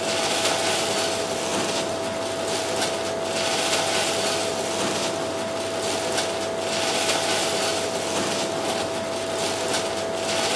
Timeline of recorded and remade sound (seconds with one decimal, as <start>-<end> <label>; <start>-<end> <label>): 0.0-10.6 recorded